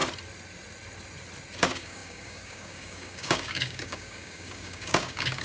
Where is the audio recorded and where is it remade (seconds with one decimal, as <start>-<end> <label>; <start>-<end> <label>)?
0.0-1.6 recorded; 1.6-5.4 remade